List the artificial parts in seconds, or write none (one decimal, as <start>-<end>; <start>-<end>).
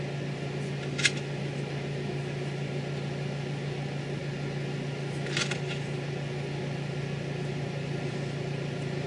none